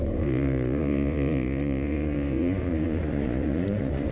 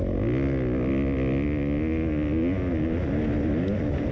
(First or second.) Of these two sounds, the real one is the second